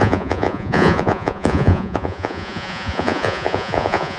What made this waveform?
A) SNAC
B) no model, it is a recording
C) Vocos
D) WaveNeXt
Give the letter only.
C